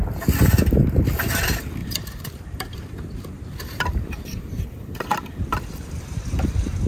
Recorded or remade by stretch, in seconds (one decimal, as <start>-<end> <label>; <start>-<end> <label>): 0.0-1.8 recorded; 1.8-5.9 remade; 5.9-6.9 recorded